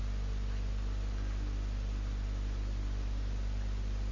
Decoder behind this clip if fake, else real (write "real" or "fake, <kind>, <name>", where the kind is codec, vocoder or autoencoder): real